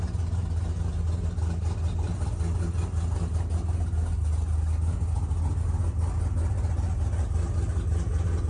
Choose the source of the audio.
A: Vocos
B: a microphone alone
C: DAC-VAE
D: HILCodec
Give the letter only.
B